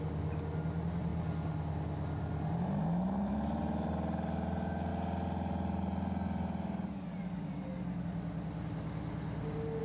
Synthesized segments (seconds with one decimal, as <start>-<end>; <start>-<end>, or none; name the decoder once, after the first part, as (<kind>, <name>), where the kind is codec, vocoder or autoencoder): none